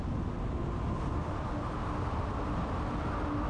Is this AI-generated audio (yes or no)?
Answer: no